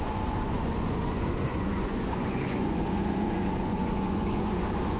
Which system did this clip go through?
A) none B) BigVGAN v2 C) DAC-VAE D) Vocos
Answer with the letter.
D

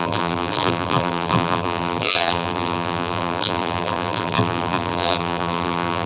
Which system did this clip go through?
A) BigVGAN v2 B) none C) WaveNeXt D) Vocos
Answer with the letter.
A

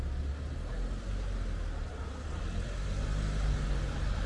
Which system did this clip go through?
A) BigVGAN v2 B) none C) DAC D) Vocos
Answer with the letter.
B